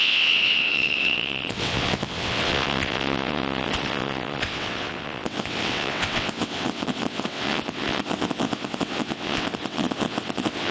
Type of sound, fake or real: fake